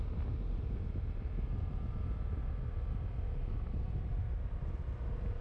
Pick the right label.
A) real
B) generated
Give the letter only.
A